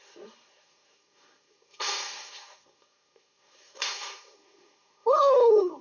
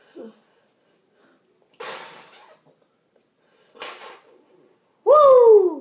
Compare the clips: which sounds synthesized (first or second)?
first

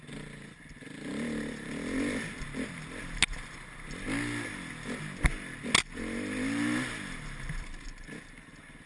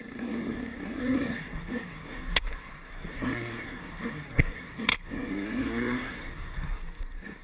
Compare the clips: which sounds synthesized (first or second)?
second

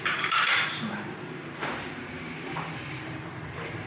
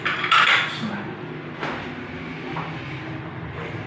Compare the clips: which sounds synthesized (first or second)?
first